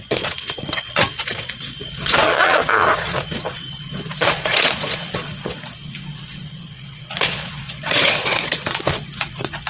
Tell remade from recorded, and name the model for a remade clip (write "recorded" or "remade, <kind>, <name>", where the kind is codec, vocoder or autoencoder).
remade, vocoder, Vocos